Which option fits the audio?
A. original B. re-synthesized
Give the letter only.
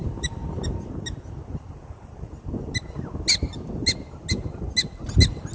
A